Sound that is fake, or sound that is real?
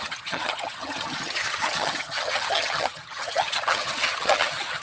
fake